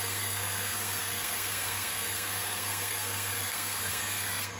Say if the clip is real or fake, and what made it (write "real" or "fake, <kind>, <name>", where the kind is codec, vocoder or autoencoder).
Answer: fake, codec, SNAC